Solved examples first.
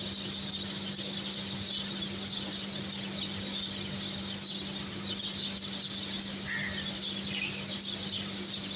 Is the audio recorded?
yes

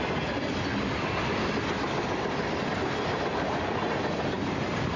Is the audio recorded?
yes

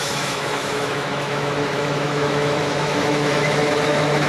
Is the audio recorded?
no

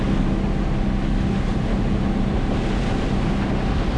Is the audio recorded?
yes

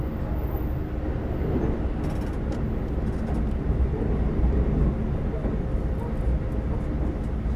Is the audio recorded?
yes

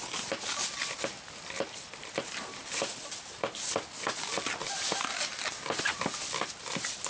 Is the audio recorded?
yes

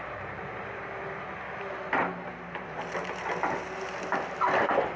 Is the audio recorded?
yes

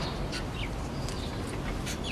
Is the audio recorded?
yes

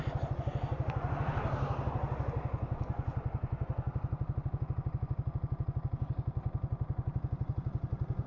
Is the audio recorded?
yes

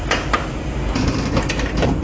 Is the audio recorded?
yes